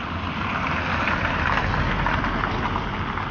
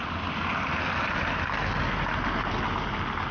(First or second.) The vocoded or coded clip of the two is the first